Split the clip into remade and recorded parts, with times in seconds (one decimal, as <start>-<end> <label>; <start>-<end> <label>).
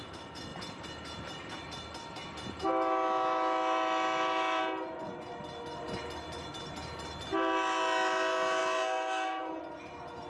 0.0-10.3 recorded